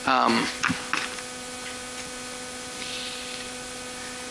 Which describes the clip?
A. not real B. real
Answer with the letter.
B